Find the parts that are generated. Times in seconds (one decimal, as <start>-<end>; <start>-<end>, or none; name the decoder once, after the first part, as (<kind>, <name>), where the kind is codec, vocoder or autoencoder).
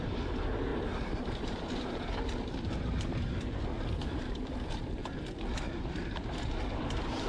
0.0-3.7 (vocoder, BigVGAN v2); 4.2-5.0; 5.9-7.3